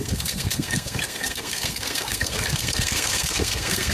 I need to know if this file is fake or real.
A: fake